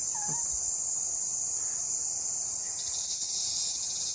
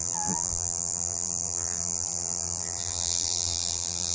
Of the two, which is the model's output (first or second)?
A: second